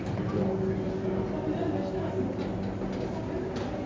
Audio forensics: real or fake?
real